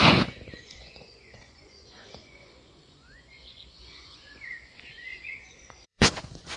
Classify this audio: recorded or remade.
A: remade